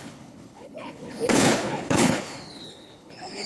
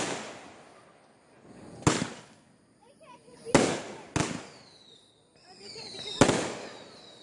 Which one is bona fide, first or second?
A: second